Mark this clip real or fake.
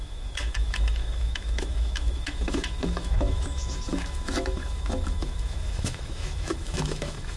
fake